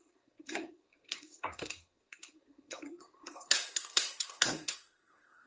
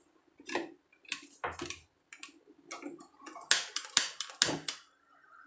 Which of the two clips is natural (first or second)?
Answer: second